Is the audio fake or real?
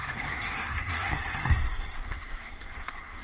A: fake